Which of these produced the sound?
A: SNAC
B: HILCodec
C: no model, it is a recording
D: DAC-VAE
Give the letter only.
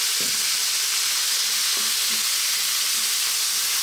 C